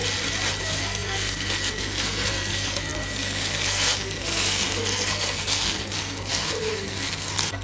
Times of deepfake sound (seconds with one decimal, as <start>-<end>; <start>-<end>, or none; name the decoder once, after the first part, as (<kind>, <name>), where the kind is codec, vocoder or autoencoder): 0.6-7.6 (codec, SNAC)